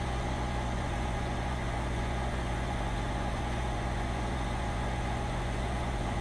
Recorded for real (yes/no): no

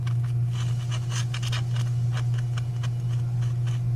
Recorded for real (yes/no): yes